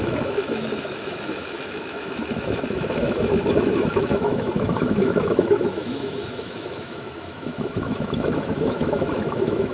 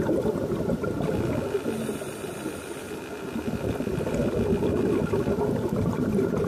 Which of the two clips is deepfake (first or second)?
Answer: first